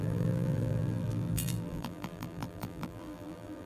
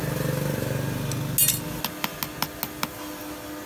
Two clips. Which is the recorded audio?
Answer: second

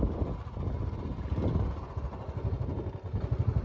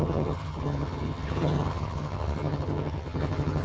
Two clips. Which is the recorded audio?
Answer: first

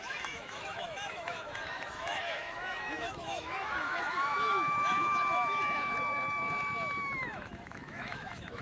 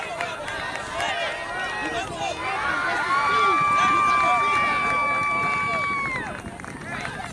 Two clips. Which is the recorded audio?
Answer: second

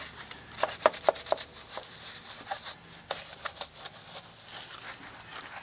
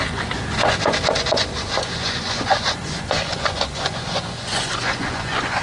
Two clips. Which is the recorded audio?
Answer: first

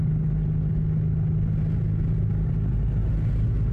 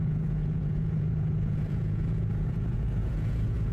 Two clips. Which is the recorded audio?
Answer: first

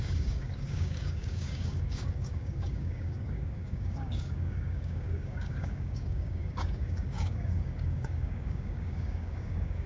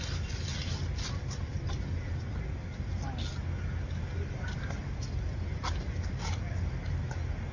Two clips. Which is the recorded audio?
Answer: second